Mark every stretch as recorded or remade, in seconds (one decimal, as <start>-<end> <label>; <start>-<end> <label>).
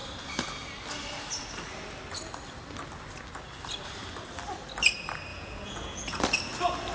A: 0.0-5.3 recorded; 5.3-6.2 remade; 6.2-6.9 recorded